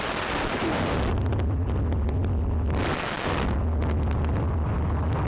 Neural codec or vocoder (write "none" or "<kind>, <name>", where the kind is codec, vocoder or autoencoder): none